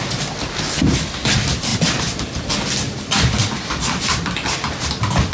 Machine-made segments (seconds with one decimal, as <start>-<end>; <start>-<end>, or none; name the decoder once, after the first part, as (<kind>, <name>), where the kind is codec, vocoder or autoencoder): none